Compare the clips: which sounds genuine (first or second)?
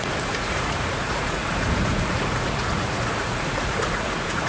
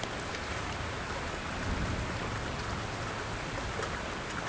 second